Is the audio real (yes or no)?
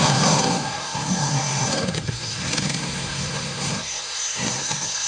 no